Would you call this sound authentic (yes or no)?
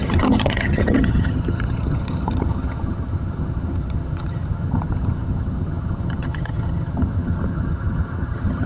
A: no